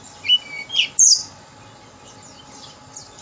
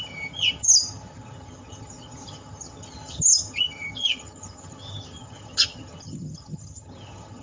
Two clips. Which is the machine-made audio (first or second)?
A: second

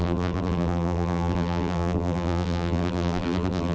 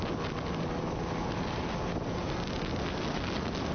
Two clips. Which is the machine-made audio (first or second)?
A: first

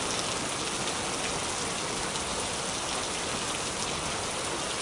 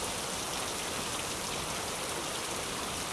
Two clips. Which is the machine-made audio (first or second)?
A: second